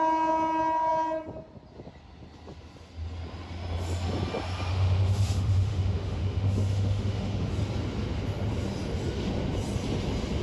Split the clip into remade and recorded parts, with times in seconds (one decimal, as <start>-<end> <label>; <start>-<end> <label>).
0.0-4.7 recorded; 4.7-7.5 remade; 7.5-10.4 recorded